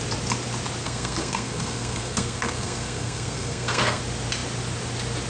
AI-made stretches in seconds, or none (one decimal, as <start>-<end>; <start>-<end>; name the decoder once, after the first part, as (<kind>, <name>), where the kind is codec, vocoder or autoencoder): 0.8-4.0 (codec, SNAC)